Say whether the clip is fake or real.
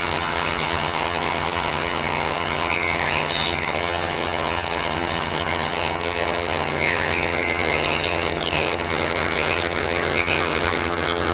fake